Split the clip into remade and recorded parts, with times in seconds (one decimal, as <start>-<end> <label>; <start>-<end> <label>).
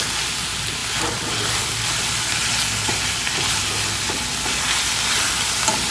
0.0-5.9 recorded